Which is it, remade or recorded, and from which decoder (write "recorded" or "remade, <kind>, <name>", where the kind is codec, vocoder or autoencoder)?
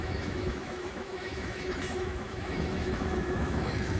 remade, autoencoder, DAC-VAE